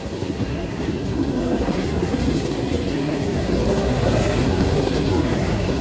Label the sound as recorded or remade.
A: remade